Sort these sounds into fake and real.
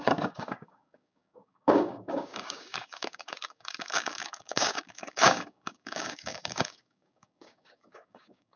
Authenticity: fake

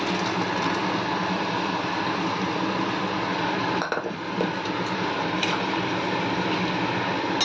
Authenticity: real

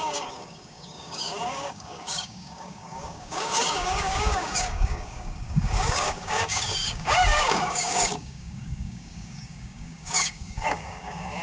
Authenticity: fake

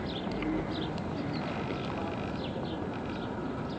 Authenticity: real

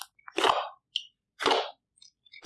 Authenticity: real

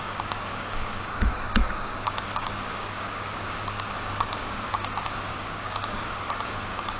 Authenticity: fake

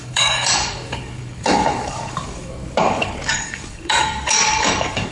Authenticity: fake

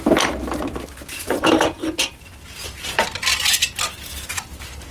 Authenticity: real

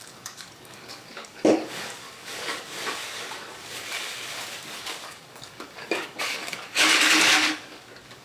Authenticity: fake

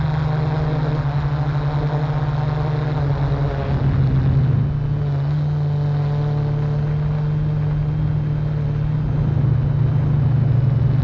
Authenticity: real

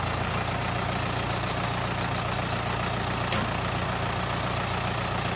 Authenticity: real